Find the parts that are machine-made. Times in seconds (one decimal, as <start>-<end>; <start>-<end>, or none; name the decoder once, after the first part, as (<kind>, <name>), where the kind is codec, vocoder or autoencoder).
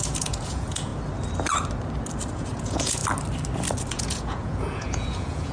0.0-0.9 (vocoder, Vocos); 2.3-3.0; 3.9-5.5